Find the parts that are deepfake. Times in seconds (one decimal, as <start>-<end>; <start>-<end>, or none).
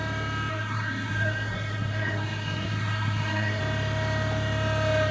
0.5-3.6